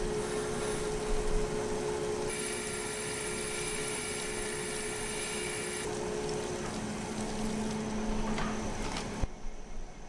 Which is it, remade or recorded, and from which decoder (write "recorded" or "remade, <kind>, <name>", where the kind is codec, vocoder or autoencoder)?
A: recorded